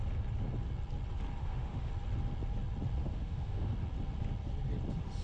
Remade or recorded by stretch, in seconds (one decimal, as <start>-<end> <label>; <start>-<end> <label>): 0.0-1.4 recorded; 1.4-1.9 remade; 1.9-3.0 recorded; 3.0-3.7 remade; 3.7-5.2 recorded